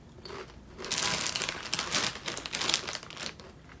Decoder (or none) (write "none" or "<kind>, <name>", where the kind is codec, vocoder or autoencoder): none